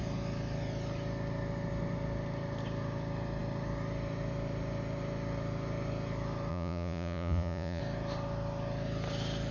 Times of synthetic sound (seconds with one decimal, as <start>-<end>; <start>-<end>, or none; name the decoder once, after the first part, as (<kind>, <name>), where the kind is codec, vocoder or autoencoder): 6.5-7.8 (vocoder, Vocos)